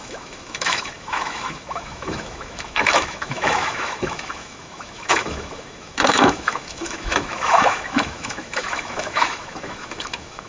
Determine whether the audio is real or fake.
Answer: fake